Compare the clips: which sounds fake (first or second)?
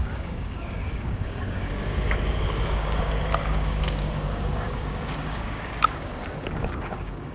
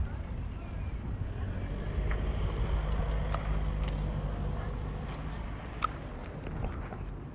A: first